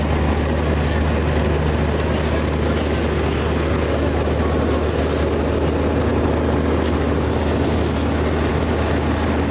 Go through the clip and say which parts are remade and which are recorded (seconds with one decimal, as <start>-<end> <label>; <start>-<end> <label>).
0.0-9.5 recorded